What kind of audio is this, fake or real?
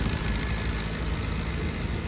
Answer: real